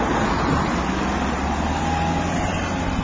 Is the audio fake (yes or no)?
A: no